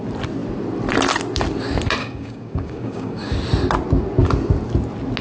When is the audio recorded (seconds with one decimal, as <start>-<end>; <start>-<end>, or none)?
0.0-2.0; 3.3-5.2